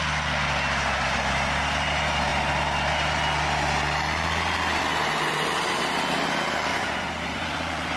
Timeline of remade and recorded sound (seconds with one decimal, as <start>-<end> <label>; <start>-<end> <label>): 0.0-6.7 recorded; 6.7-8.0 remade